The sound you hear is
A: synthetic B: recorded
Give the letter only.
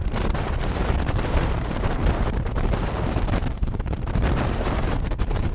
A